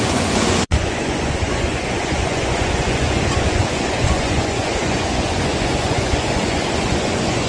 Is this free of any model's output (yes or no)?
no